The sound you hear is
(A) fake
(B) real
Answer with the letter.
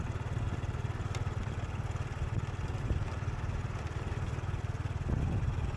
B